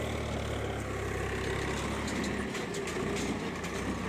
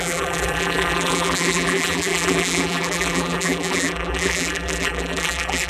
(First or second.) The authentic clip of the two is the first